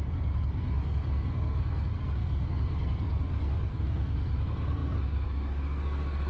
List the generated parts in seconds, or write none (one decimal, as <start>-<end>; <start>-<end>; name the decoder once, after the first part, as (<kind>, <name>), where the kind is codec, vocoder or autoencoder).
0.0-6.3 (codec, SNAC)